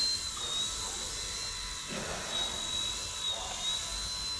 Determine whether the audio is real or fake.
real